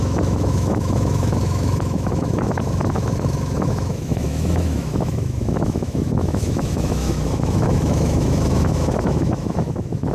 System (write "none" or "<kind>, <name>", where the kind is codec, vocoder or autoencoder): autoencoder, DAC-VAE